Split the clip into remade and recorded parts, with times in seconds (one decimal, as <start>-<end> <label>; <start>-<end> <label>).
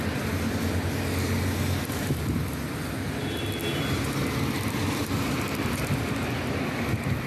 0.0-7.3 recorded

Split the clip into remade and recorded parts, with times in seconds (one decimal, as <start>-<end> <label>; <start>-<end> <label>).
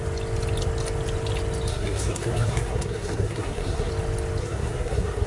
0.0-1.7 recorded; 1.7-3.9 remade; 3.9-4.4 recorded; 4.4-5.3 remade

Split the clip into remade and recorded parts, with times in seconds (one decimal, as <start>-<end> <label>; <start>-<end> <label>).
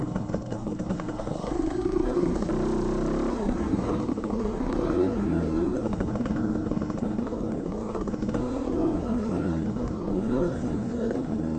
0.0-2.5 remade; 2.5-3.3 recorded; 3.3-11.6 remade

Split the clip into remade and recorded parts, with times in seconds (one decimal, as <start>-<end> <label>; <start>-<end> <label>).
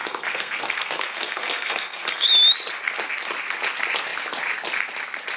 0.0-2.3 remade; 2.3-5.4 recorded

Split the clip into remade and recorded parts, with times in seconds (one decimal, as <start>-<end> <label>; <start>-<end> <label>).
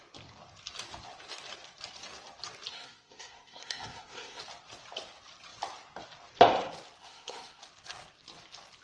0.0-2.7 recorded; 2.7-4.4 remade; 4.4-7.0 recorded; 7.0-7.6 remade; 7.6-8.8 recorded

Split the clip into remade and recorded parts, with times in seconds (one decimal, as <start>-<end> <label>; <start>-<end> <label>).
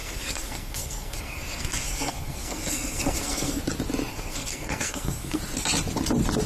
0.0-3.6 remade; 3.6-4.1 recorded; 4.1-5.4 remade; 5.4-6.5 recorded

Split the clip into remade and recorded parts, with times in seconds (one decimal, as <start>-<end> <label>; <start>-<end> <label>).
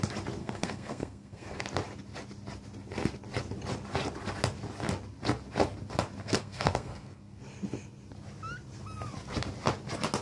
0.0-0.4 recorded; 0.4-1.6 remade; 1.6-6.2 recorded; 6.2-7.4 remade; 7.4-10.2 recorded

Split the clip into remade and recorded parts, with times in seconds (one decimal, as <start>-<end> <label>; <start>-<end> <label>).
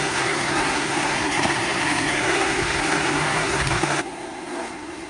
0.0-5.1 remade